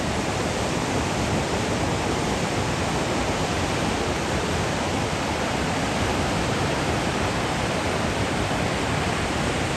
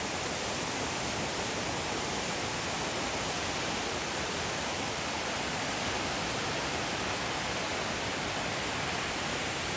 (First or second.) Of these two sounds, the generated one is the first